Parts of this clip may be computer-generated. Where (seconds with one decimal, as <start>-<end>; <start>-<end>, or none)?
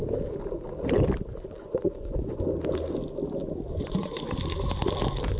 1.6-2.4; 3.7-4.2